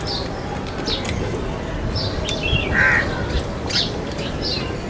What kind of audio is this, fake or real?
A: real